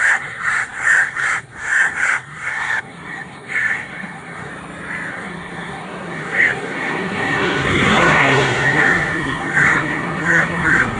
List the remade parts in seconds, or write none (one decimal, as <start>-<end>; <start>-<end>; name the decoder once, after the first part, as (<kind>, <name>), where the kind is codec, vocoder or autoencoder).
0.0-4.5 (codec, SNAC); 5.1-11.0